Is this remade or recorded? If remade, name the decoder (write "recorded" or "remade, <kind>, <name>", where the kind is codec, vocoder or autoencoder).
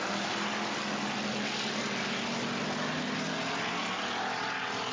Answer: recorded